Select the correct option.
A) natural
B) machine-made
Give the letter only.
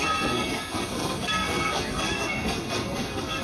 B